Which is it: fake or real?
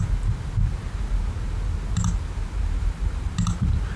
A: real